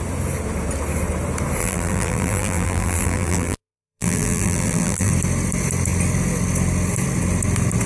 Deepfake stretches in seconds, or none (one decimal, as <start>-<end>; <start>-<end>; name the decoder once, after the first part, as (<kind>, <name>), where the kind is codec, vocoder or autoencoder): 1.6-5.1 (vocoder, BigVGAN v2)